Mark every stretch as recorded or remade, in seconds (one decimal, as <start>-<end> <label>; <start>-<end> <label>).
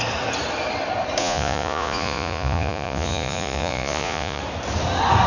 0.0-1.2 recorded; 1.2-4.4 remade; 4.4-5.3 recorded